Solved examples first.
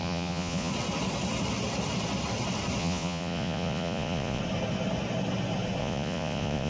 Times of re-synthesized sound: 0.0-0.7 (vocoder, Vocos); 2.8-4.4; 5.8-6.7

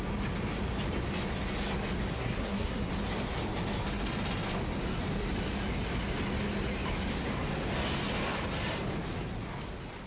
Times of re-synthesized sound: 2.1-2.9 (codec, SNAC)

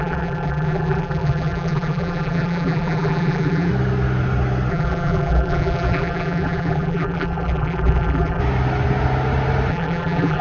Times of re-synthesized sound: 0.0-3.7 (vocoder, BigVGAN v2); 4.7-8.4; 9.7-10.4